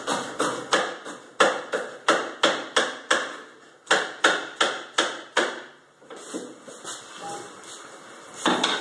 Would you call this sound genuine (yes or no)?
yes